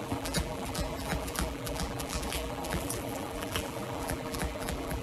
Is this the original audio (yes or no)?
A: no